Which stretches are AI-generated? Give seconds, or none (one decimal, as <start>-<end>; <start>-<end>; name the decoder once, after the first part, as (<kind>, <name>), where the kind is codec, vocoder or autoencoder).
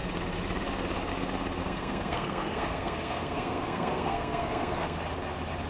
1.6-5.0 (codec, SNAC)